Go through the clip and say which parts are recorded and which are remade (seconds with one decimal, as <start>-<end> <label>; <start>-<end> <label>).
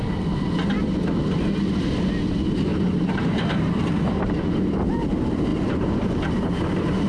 0.0-2.7 recorded; 2.7-4.2 remade; 4.2-5.5 recorded; 5.5-7.1 remade